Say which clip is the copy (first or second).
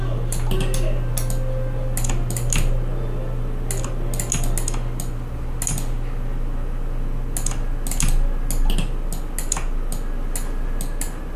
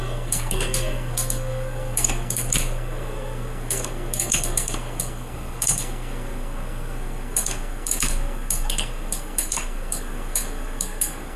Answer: second